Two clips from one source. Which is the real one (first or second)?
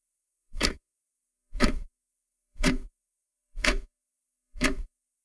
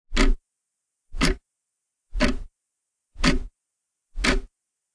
second